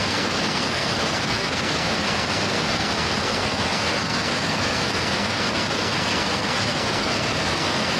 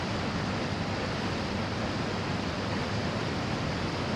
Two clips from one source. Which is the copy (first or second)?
first